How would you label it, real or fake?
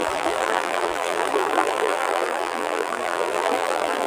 fake